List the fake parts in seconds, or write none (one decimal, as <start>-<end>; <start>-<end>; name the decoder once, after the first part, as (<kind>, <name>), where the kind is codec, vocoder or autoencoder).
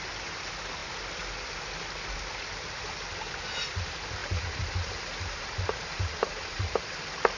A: 4.2-7.0 (vocoder, BigVGAN v2)